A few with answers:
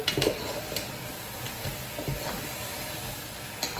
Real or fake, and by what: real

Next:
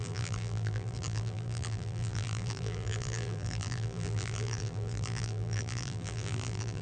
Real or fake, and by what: fake, vocoder, BigVGAN v2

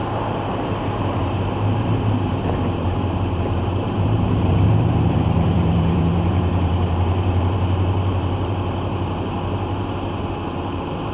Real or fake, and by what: fake, vocoder, BigVGAN v2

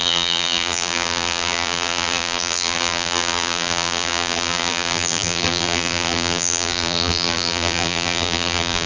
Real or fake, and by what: fake, vocoder, BigVGAN v2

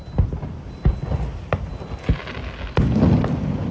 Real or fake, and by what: real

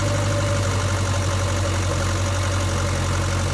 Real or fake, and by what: real